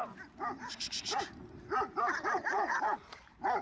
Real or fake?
fake